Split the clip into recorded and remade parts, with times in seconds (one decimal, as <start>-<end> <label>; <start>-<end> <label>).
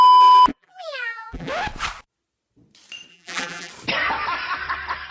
0.0-0.5 recorded; 0.5-1.5 remade; 1.5-3.1 recorded; 3.1-3.7 remade; 3.7-5.1 recorded